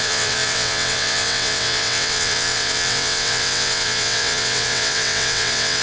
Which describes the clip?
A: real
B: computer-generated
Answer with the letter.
B